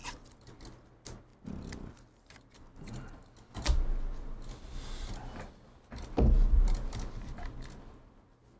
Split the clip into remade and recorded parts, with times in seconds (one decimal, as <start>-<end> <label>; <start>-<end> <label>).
0.0-8.6 recorded